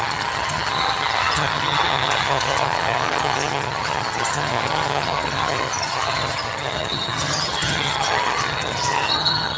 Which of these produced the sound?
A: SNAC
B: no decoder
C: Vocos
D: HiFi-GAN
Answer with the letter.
D